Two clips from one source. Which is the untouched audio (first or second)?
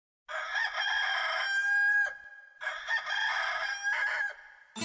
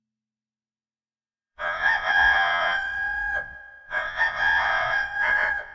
first